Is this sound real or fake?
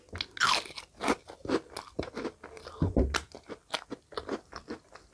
real